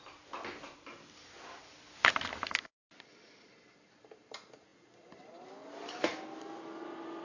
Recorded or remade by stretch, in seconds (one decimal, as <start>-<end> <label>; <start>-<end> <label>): 0.0-7.2 recorded